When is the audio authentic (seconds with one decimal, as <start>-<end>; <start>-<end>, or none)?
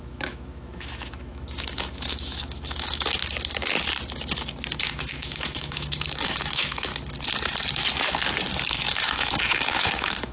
3.2-4.8; 6.9-8.7